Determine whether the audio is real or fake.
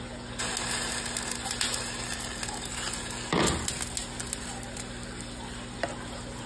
real